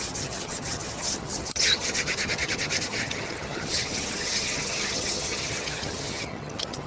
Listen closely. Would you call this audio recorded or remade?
remade